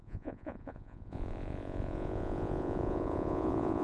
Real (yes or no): no